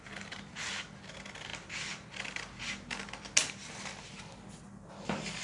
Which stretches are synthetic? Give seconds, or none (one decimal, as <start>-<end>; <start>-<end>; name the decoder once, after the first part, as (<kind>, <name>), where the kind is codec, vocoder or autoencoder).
none